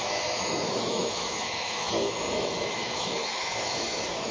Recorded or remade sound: remade